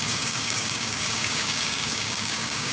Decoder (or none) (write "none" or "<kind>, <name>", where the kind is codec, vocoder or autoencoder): codec, DAC